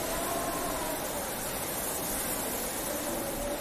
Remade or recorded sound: recorded